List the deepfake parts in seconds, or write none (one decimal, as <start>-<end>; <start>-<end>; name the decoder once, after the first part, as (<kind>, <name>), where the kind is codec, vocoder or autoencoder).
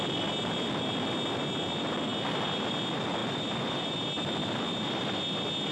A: 2.1-2.7 (vocoder, BigVGAN v2); 3.2-3.9; 4.4-5.0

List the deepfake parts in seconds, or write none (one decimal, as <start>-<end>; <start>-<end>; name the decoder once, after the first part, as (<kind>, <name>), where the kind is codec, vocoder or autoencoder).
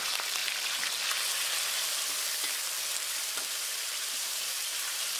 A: 0.0-0.4 (vocoder, BigVGAN v2); 3.5-5.2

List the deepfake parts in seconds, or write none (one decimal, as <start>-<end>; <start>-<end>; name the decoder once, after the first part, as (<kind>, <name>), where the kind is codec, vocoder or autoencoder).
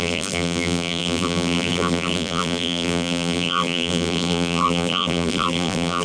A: 0.0-6.0 (vocoder, BigVGAN v2)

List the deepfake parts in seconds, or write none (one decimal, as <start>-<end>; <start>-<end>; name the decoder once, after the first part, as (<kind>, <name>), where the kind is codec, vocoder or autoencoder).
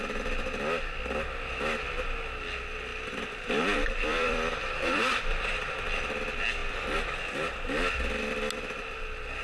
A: 2.9-5.7 (vocoder, BigVGAN v2); 6.6-7.2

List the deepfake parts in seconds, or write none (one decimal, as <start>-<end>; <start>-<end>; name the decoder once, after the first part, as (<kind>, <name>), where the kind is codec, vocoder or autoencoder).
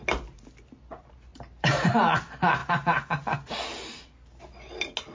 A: 1.3-1.9 (vocoder, BigVGAN v2); 2.6-3.6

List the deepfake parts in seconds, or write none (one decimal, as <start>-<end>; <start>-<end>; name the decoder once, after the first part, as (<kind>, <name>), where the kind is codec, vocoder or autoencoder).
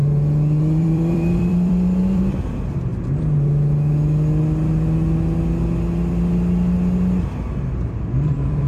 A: 0.6-2.9 (vocoder, BigVGAN v2); 8.0-8.7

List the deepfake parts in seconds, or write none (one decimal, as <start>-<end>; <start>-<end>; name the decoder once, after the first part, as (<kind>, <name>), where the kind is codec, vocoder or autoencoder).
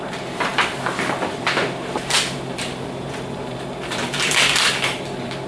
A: 0.0-5.5 (vocoder, BigVGAN v2)